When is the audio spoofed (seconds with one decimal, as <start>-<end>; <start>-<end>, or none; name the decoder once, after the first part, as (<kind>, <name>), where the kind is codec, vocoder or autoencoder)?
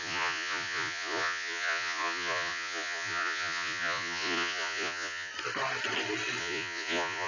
0.0-5.3 (vocoder, Vocos); 6.4-7.3